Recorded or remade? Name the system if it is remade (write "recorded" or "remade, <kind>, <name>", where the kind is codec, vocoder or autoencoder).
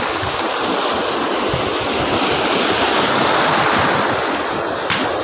recorded